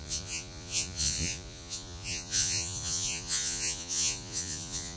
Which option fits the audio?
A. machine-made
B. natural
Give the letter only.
A